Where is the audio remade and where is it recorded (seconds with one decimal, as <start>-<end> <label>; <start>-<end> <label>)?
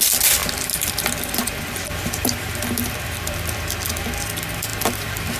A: 0.0-0.4 recorded; 0.4-3.6 remade; 3.6-4.7 recorded; 4.7-5.4 remade